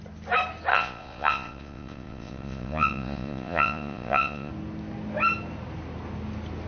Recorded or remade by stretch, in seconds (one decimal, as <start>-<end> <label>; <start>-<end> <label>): 0.0-0.7 recorded; 0.7-4.5 remade; 4.5-6.7 recorded